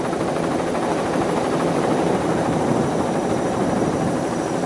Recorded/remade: remade